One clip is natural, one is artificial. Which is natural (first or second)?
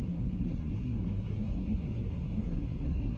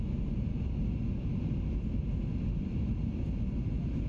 second